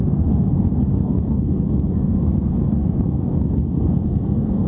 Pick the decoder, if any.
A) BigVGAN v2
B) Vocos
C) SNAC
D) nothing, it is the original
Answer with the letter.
C